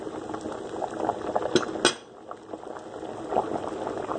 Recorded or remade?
recorded